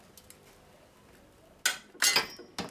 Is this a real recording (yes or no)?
yes